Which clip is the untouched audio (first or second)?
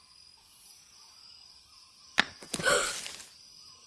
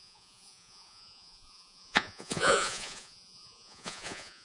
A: first